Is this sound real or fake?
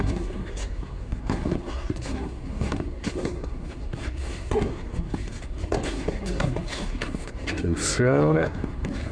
fake